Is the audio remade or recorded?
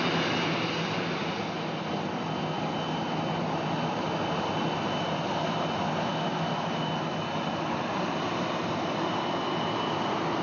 recorded